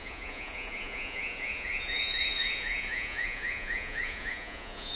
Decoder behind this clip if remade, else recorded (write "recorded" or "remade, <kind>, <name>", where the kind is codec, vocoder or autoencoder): remade, vocoder, Vocos